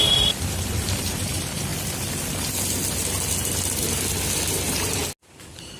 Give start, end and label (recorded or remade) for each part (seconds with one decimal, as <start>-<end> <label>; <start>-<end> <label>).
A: 0.0-1.7 remade; 1.7-5.2 recorded; 5.2-5.8 remade